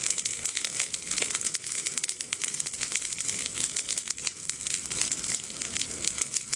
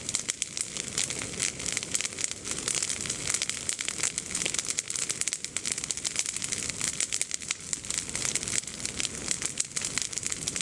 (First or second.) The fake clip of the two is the first